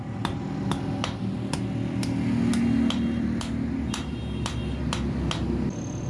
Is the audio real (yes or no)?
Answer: yes